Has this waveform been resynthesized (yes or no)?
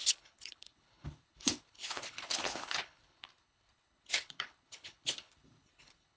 yes